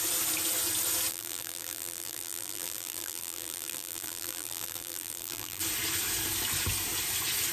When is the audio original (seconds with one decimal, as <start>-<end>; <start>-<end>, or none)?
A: 0.0-1.1; 5.6-7.5